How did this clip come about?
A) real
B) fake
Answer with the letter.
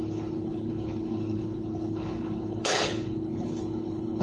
B